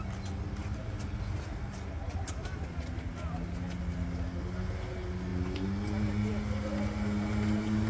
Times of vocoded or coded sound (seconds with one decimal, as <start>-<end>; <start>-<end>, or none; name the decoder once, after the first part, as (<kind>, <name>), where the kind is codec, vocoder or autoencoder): none